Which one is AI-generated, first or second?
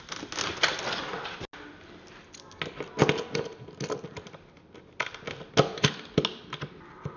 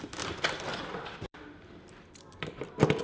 second